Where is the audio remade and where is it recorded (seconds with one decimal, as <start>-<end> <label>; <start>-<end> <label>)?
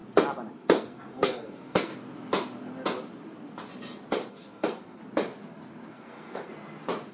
0.0-0.5 recorded; 0.5-1.9 remade; 1.9-4.3 recorded; 4.3-5.0 remade; 5.0-5.9 recorded; 5.9-6.5 remade; 6.5-7.1 recorded